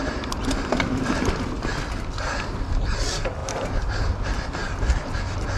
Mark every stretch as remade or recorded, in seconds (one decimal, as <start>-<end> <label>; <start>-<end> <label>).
0.0-5.6 recorded